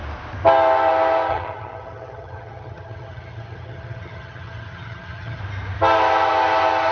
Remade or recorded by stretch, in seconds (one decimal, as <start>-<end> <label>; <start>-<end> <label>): 0.0-1.3 recorded; 1.3-5.4 remade; 5.4-6.9 recorded